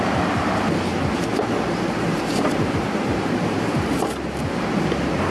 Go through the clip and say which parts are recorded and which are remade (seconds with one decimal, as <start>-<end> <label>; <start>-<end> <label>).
0.0-0.9 recorded; 0.9-4.1 remade; 4.1-5.3 recorded